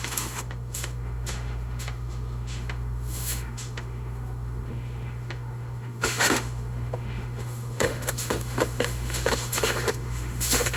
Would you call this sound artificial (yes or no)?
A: yes